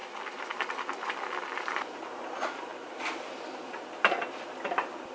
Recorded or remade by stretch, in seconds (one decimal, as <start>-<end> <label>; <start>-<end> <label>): 0.0-5.1 recorded